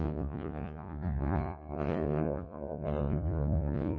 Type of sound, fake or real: fake